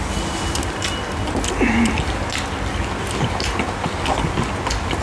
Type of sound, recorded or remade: recorded